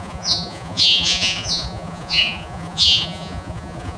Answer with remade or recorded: remade